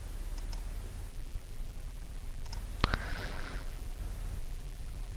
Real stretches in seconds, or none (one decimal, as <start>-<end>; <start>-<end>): 0.0-1.1; 2.5-3.1; 4.0-4.4